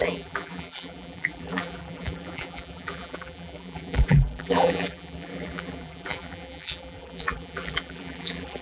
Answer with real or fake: fake